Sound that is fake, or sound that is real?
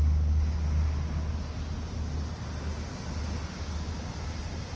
real